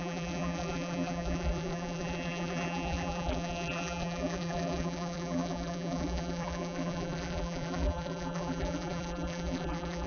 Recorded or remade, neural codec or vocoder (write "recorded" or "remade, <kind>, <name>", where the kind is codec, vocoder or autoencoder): remade, vocoder, BigVGAN v2